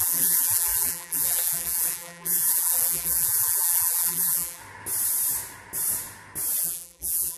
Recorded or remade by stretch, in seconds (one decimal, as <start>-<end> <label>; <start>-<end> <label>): 0.0-4.6 remade; 4.6-6.6 recorded; 6.6-7.4 remade